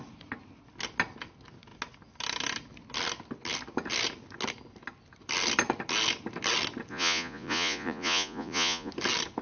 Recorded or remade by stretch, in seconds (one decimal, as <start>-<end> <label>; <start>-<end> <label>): 0.0-6.9 recorded; 6.9-8.9 remade; 8.9-9.4 recorded